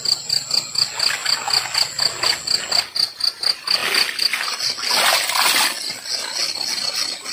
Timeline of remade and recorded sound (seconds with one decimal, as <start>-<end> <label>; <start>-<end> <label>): 0.0-7.3 recorded